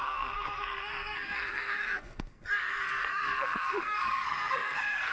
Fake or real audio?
fake